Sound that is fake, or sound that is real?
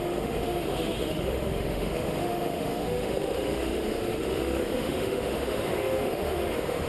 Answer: fake